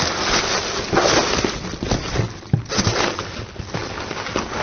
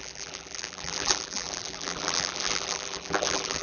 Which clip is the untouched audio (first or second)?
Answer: first